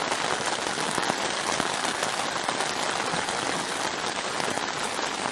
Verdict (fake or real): real